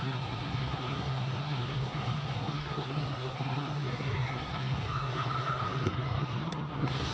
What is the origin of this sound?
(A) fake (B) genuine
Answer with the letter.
A